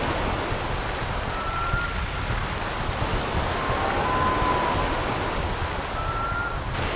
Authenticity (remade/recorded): recorded